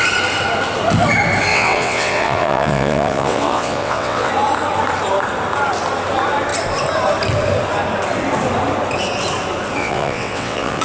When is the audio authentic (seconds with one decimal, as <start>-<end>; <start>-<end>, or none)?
0.0-1.5; 4.3-9.8

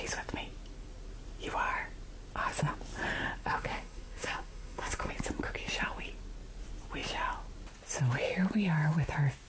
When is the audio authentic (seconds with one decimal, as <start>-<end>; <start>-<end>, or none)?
0.0-3.4; 5.1-9.5

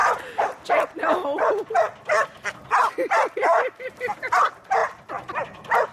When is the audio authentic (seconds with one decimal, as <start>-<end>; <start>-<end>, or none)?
0.0-5.9

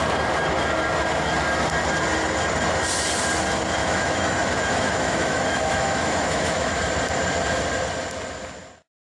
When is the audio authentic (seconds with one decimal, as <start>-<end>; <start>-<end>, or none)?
0.0-3.8; 6.8-9.1